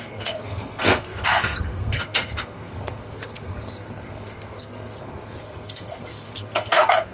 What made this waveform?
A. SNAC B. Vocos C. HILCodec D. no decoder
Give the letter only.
A